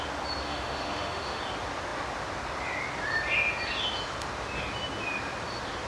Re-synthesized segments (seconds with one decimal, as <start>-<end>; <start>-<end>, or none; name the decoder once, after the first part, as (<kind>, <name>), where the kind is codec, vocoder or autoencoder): 0.4-1.4 (autoencoder, DAC-VAE)